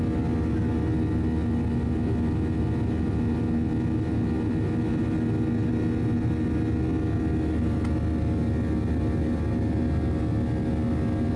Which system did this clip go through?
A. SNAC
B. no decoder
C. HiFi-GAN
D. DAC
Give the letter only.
B